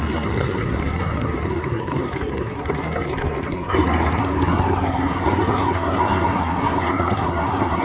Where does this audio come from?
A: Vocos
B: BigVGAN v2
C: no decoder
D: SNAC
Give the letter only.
D